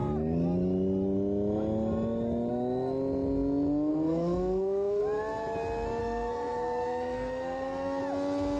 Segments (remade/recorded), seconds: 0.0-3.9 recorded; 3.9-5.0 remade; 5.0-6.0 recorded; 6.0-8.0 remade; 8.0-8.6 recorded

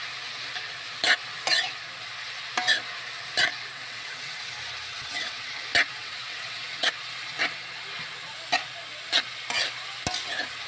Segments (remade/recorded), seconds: 0.0-3.6 recorded; 3.6-4.5 remade; 4.5-4.9 recorded; 4.9-5.5 remade; 5.5-6.0 recorded; 6.0-6.9 remade; 6.9-10.7 recorded

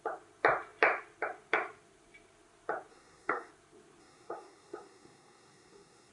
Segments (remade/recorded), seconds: 0.0-2.9 recorded; 2.9-3.5 remade; 3.5-4.0 recorded; 4.0-6.1 remade

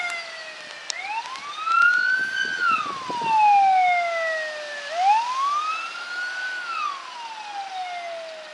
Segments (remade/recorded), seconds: 0.0-8.5 recorded

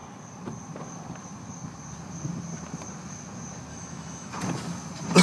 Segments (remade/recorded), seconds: 0.0-3.7 recorded; 3.7-4.3 remade; 4.3-5.2 recorded

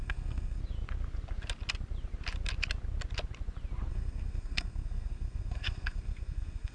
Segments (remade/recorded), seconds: 0.0-0.6 remade; 0.6-3.9 recorded; 3.9-6.7 remade

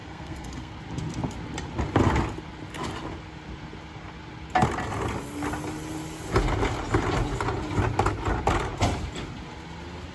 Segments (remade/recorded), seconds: 0.0-0.7 remade; 0.7-10.1 recorded

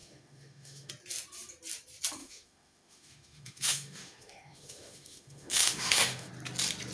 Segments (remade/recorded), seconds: 0.0-0.9 remade; 0.9-2.2 recorded; 2.2-6.3 remade; 6.3-6.9 recorded